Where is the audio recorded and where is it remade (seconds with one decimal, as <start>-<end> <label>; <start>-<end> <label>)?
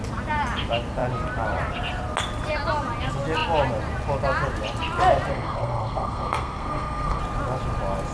0.0-5.3 recorded; 5.3-7.2 remade; 7.2-8.1 recorded